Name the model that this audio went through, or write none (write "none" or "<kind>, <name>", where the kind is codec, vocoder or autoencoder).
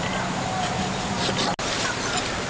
none